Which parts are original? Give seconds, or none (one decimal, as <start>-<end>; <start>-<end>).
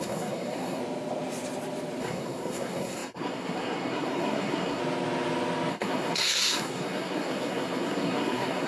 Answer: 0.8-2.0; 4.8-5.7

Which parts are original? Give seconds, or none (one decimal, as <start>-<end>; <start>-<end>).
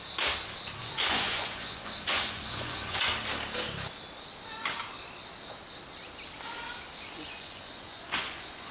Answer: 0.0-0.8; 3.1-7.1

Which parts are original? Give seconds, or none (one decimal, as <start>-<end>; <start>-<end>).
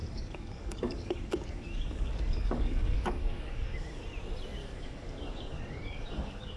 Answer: 4.0-4.6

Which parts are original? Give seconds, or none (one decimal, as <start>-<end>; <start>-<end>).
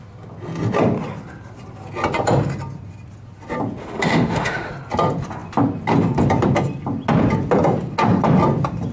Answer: 0.0-3.8; 4.7-8.9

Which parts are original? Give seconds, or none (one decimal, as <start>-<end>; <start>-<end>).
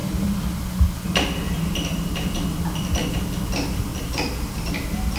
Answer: 3.1-3.9; 4.6-5.2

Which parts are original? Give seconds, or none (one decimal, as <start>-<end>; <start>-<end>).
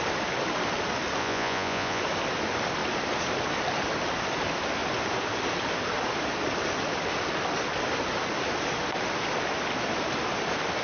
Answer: 0.0-1.2; 2.0-10.8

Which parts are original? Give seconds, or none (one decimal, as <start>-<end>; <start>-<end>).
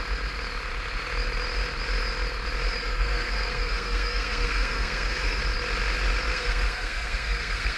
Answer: 0.0-2.8; 5.4-6.3